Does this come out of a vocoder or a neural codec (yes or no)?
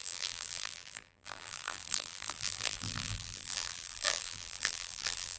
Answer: yes